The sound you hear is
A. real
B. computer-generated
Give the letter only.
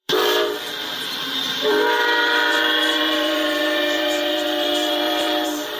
B